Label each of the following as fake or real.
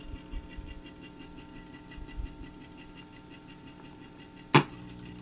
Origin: real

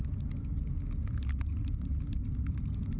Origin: real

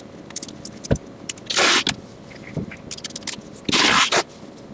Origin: real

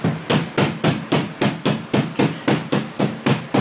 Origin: real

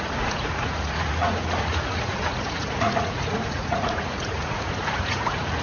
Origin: fake